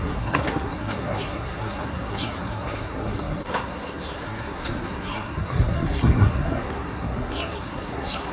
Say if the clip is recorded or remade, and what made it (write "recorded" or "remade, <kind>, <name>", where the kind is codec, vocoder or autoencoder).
remade, codec, SNAC